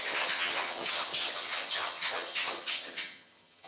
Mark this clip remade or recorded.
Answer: remade